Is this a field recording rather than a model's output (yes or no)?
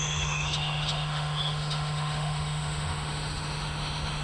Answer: no